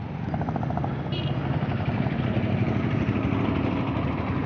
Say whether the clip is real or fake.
real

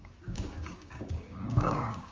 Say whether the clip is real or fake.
fake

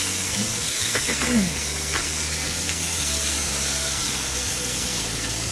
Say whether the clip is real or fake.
fake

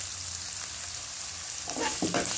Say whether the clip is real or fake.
fake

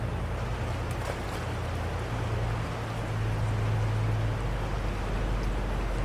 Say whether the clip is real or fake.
real